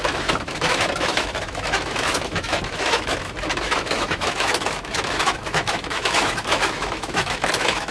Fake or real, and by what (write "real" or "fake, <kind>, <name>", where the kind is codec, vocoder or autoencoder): fake, autoencoder, DAC-VAE